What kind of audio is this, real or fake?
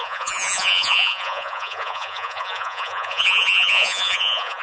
fake